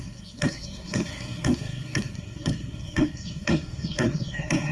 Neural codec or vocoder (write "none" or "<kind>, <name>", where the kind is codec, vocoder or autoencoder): codec, SNAC